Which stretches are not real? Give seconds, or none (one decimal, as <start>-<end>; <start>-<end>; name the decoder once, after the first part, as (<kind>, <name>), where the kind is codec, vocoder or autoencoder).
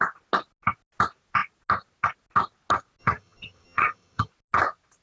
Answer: 3.0-4.3 (vocoder, HiFi-GAN)